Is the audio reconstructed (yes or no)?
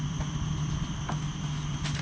no